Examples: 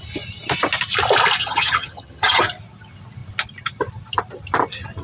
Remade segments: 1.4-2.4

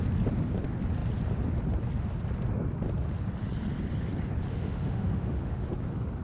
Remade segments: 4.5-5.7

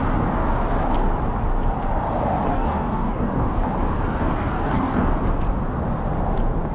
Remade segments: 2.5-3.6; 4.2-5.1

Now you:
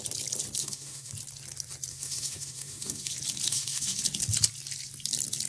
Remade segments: 0.6-1.1; 1.9-3.1; 3.5-4.0